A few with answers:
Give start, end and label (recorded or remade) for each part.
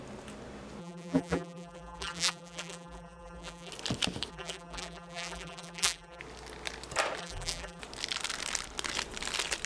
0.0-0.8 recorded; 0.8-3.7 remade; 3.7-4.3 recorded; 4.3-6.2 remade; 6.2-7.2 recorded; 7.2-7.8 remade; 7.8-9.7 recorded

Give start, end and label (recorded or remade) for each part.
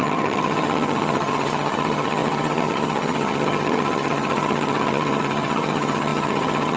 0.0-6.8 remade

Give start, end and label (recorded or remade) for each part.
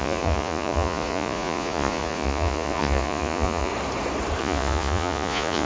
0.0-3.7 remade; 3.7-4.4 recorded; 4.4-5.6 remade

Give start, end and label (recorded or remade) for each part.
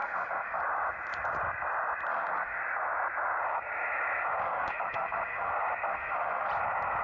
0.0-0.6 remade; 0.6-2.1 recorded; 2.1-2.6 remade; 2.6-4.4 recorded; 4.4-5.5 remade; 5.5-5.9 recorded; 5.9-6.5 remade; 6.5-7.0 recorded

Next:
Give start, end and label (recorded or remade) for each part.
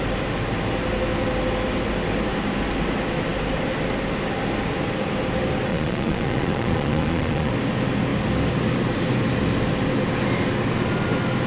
0.0-5.7 recorded; 5.7-7.5 remade; 7.5-11.5 recorded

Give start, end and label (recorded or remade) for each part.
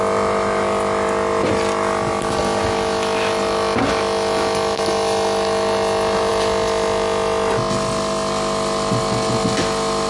0.0-10.1 recorded